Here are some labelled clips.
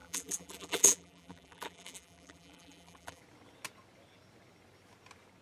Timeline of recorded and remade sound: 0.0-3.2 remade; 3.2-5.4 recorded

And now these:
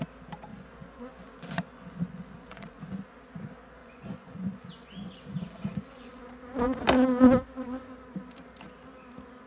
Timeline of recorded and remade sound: 0.0-0.5 recorded; 0.5-2.8 remade; 2.8-3.8 recorded; 3.8-6.2 remade; 6.2-9.5 recorded

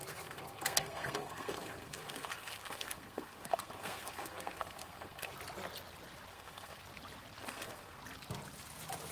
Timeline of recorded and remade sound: 0.0-5.3 remade; 5.3-6.3 recorded; 6.3-6.8 remade; 6.8-7.4 recorded; 7.4-8.0 remade; 8.0-9.1 recorded

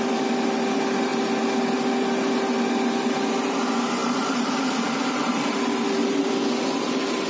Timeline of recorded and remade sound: 0.0-4.0 recorded; 4.0-6.3 remade; 6.3-7.3 recorded